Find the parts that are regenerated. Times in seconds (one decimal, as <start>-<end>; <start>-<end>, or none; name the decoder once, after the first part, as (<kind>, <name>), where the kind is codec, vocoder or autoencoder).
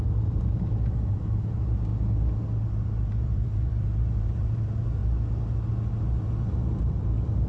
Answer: 0.0-1.9 (vocoder, BigVGAN v2); 2.6-5.0; 5.9-7.5